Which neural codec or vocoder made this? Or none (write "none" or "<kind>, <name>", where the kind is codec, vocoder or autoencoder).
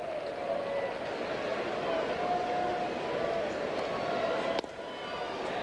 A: none